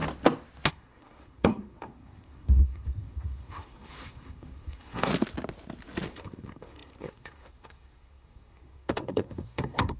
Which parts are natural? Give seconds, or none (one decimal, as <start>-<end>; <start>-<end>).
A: 0.0-0.7; 5.1-6.1